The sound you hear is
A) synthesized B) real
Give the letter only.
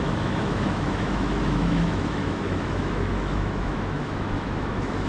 A